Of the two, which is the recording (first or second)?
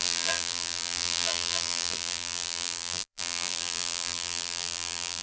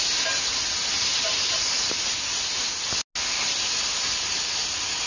second